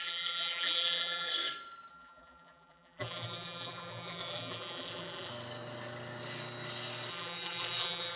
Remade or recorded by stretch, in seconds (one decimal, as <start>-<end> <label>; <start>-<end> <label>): 0.0-1.3 remade; 1.3-1.9 recorded; 1.9-5.3 remade; 5.3-7.1 recorded; 7.1-8.2 remade